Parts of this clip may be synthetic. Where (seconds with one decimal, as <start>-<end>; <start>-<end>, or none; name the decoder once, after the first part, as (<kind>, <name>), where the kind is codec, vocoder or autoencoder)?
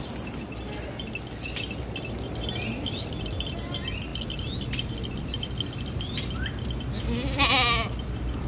none